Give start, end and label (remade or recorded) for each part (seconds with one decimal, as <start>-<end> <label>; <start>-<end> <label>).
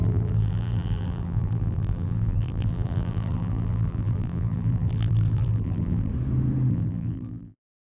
0.0-6.1 remade; 6.1-6.7 recorded; 6.7-7.8 remade